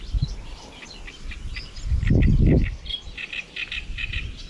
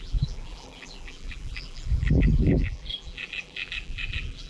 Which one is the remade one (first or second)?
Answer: second